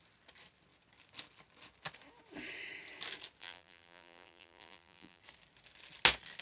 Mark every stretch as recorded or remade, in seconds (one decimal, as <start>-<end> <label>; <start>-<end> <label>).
0.0-3.4 recorded; 3.4-5.2 remade; 5.2-6.4 recorded